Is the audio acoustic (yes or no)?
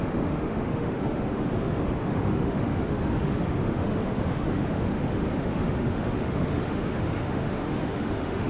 no